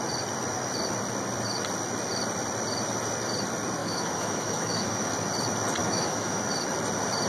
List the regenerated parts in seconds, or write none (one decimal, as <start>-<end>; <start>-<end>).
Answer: 3.8-5.1; 5.8-6.4